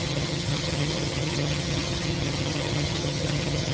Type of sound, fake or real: fake